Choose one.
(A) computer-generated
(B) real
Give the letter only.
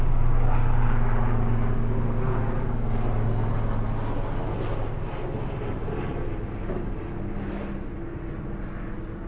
B